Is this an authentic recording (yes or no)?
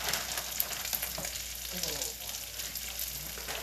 yes